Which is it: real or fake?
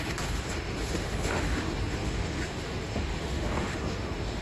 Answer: fake